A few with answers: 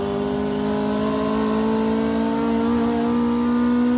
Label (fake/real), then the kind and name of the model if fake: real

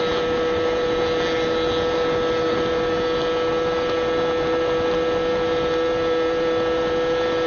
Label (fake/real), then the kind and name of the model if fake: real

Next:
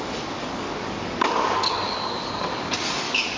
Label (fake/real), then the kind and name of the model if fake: fake, codec, DAC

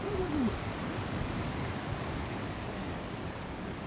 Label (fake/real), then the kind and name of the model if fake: fake, codec, DAC